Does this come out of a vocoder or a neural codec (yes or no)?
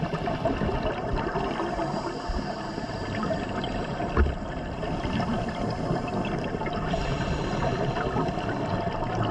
no